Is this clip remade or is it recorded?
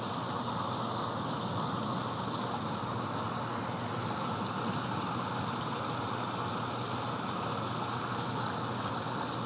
recorded